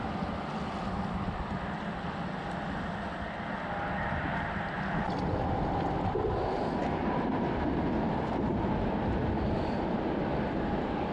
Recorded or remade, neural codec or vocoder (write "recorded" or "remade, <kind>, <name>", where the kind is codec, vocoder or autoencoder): recorded